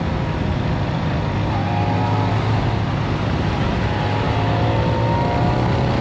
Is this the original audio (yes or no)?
yes